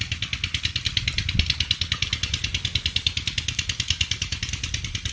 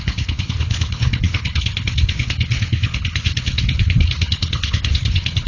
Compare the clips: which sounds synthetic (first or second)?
second